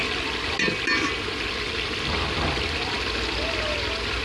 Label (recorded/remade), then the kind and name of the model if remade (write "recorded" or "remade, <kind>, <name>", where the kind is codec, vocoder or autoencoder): recorded